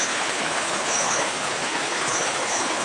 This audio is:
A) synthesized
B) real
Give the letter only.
A